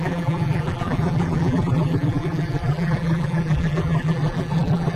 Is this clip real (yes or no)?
no